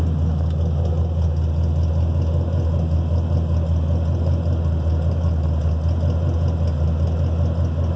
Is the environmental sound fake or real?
real